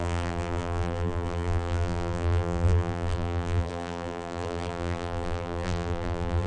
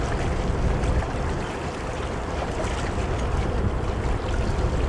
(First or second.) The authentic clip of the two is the second